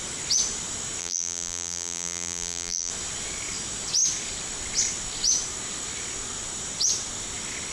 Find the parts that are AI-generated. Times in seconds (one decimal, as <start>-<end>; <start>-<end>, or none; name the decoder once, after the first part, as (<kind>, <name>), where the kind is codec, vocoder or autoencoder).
1.0-2.9 (vocoder, BigVGAN v2)

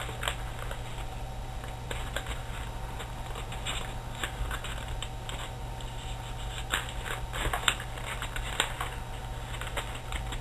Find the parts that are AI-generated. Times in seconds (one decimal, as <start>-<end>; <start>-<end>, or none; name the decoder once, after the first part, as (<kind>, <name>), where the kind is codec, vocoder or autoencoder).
none

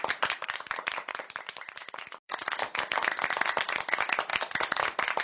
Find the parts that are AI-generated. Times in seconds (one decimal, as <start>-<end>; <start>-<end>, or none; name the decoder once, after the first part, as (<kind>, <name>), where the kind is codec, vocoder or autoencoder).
1.1-2.8 (vocoder, BigVGAN v2); 4.3-5.2

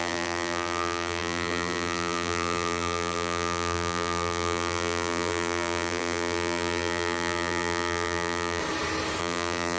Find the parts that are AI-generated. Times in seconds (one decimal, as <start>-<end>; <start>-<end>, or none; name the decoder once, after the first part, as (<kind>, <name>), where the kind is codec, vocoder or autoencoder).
0.0-8.6 (vocoder, BigVGAN v2); 9.2-9.8